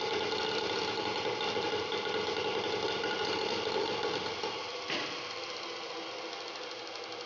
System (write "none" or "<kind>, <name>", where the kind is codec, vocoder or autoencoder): none